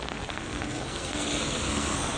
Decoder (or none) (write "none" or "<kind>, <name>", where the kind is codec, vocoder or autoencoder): codec, SNAC